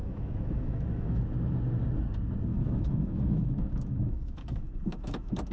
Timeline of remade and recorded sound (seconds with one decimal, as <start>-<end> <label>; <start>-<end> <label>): 0.0-1.2 remade; 1.2-2.5 recorded; 2.5-5.5 remade